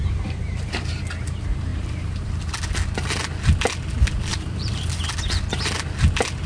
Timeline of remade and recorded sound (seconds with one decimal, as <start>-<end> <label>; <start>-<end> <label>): 0.0-1.0 remade; 1.0-1.7 recorded; 1.7-2.5 remade; 2.5-4.3 recorded; 4.3-4.8 remade; 4.8-6.5 recorded